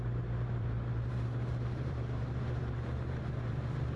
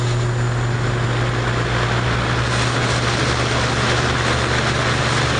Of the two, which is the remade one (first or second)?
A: first